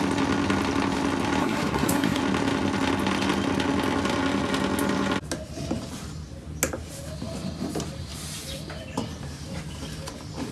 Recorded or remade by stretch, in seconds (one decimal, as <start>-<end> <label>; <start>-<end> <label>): 0.0-1.4 recorded; 1.4-2.2 remade; 2.2-10.5 recorded